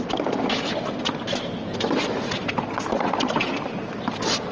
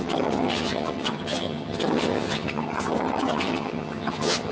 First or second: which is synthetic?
second